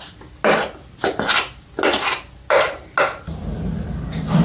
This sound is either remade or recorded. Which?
recorded